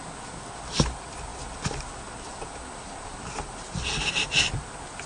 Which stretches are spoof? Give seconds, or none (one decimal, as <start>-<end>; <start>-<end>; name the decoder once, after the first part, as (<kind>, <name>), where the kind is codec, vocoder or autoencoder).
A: none